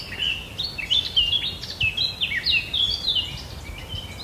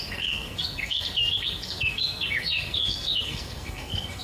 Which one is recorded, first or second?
first